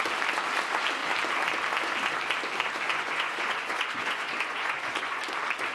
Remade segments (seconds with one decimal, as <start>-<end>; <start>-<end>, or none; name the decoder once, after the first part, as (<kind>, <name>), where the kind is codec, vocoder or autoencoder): 2.9-5.2 (vocoder, Vocos)